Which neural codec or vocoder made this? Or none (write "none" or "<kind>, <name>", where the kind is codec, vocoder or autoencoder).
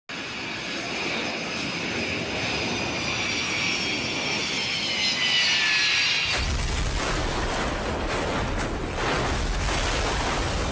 none